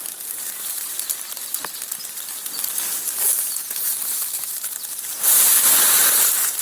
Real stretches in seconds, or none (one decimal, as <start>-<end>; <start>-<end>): 1.4-5.0

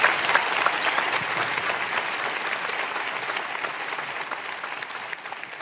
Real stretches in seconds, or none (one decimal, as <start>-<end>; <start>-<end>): 1.5-4.9

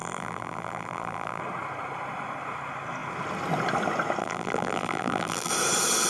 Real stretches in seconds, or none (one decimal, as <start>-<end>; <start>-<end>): 1.4-4.2; 5.5-6.1

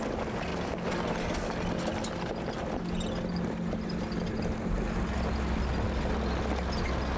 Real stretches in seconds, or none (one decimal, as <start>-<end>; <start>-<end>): 0.0-7.2

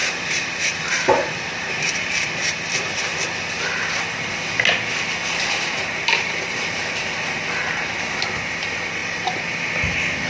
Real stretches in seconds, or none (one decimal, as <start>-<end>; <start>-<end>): 3.0-5.2; 7.9-10.3

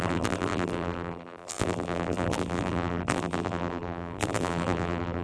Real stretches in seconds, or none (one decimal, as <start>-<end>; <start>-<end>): none